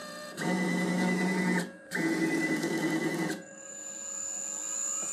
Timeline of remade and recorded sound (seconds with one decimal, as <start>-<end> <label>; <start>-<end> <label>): 0.0-3.1 remade; 3.1-3.5 recorded; 3.5-4.0 remade; 4.0-5.1 recorded